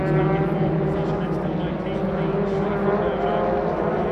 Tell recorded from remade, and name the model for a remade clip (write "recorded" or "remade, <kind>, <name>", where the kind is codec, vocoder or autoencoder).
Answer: recorded